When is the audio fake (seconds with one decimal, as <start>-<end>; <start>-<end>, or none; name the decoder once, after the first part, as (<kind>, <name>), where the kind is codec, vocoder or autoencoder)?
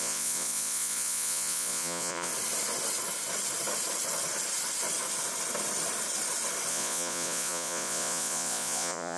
0.0-2.3 (vocoder, Vocos); 6.7-9.2